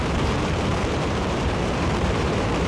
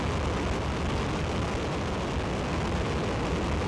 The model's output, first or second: first